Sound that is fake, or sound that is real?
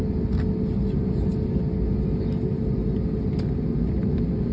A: real